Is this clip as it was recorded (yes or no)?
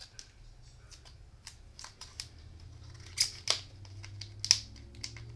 yes